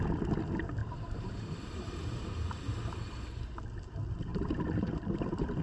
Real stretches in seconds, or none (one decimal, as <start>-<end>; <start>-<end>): 0.0-0.8; 2.7-4.3